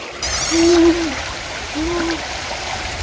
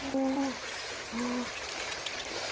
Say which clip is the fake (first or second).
first